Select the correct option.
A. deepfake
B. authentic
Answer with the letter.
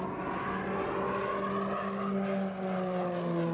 B